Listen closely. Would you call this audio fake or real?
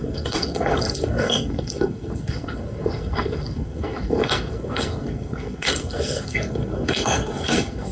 fake